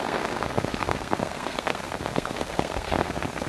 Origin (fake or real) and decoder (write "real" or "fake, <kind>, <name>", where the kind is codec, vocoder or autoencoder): fake, codec, SNAC